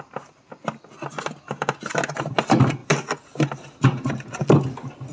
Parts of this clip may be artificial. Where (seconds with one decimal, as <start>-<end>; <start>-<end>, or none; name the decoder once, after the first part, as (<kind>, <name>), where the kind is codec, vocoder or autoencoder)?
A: none